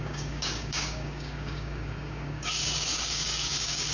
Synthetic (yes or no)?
yes